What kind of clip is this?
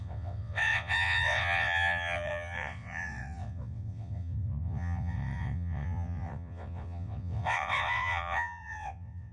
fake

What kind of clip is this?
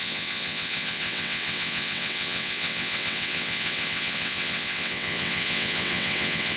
fake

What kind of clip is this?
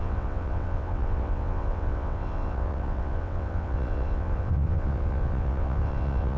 fake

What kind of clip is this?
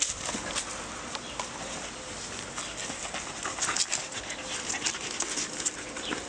real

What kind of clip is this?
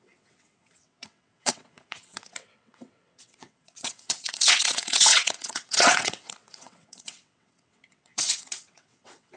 fake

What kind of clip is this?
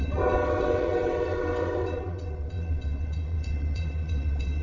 fake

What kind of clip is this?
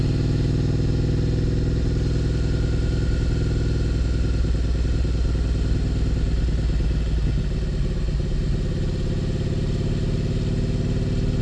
real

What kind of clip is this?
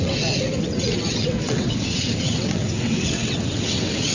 fake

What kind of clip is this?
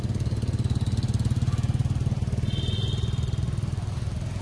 real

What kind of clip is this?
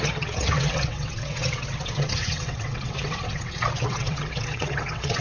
fake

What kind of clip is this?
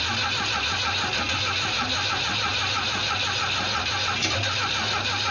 real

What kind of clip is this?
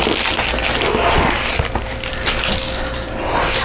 real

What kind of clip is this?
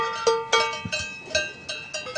real